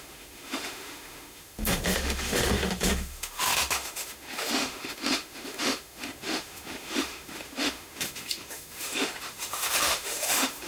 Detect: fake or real fake